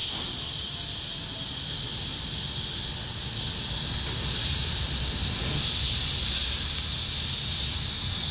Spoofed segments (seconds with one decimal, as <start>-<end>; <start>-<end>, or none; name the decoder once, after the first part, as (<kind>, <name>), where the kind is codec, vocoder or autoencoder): 4.4-6.7 (vocoder, BigVGAN v2)